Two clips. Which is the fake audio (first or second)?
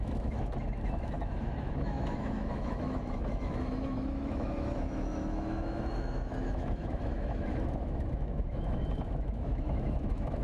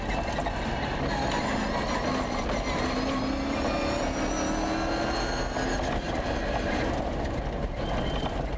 first